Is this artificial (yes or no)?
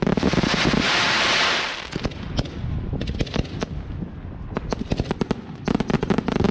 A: no